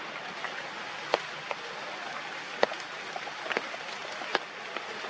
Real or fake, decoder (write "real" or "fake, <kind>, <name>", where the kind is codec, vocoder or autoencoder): real